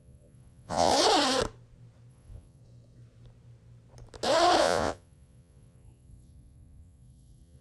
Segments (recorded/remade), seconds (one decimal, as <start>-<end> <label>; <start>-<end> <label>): 0.0-0.9 remade; 0.9-2.1 recorded; 2.1-2.6 remade; 2.6-4.6 recorded; 4.6-7.6 remade